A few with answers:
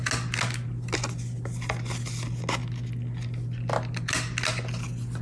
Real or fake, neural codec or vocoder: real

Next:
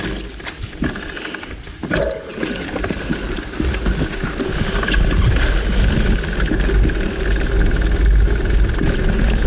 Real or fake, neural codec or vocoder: real